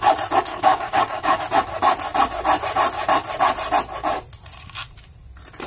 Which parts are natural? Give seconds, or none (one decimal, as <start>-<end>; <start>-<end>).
0.0-0.5; 1.4-5.7